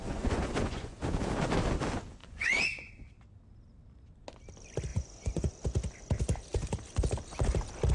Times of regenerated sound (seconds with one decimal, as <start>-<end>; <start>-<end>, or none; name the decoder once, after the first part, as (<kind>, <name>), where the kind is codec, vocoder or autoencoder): 0.0-1.0 (vocoder, Vocos); 2.2-2.9; 4.9-5.5